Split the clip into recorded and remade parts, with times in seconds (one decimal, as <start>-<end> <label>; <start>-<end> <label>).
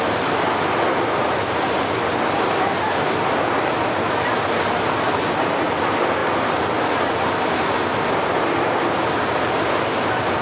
0.0-10.4 recorded